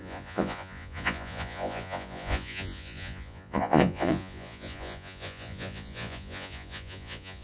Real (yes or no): no